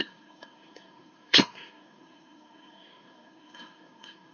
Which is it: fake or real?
fake